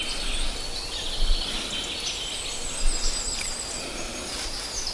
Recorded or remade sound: recorded